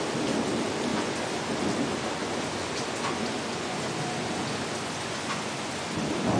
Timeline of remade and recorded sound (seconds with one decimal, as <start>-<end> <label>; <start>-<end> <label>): 0.0-0.9 recorded; 0.9-1.5 remade; 1.5-2.2 recorded; 2.2-6.0 remade; 6.0-6.4 recorded